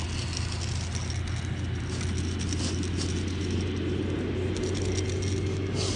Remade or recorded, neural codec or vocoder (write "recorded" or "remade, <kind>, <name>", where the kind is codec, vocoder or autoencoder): recorded